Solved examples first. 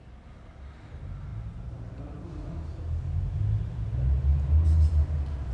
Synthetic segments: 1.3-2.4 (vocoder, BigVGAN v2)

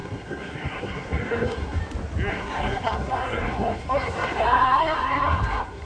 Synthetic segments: 0.0-1.8 (codec, SNAC); 2.3-5.9

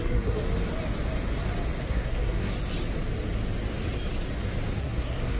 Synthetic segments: 0.0-0.4 (codec, SNAC); 1.8-2.5; 4.8-5.4

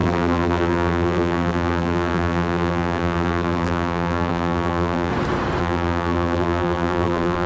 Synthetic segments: 0.0-5.1 (vocoder, BigVGAN v2); 5.6-7.5

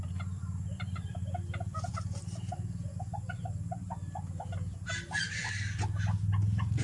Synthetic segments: none

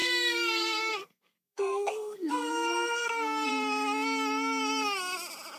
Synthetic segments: 0.0-3.5 (codec, SNAC)

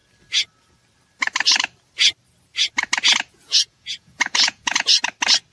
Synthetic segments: 3.3-4.9 (vocoder, Vocos)